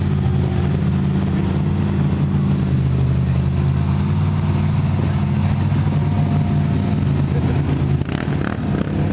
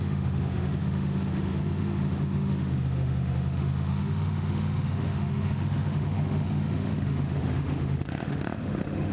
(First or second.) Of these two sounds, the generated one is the second